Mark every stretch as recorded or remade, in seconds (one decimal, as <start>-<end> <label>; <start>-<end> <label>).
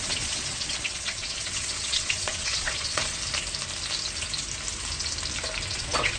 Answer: 0.0-3.2 remade; 3.2-5.7 recorded; 5.7-6.2 remade